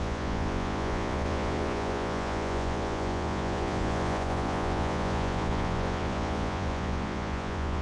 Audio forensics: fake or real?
fake